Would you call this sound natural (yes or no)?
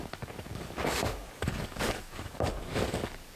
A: no